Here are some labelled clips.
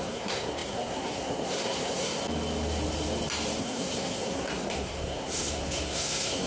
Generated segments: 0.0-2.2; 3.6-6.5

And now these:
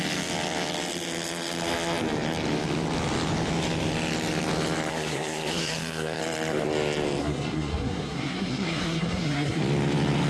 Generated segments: 4.9-6.2; 7.2-9.6

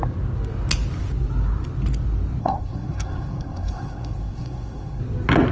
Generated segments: 2.4-5.0

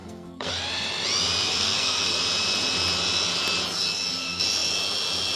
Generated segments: 0.0-0.5; 1.5-2.2

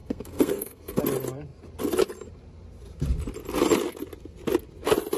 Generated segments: 0.0-1.0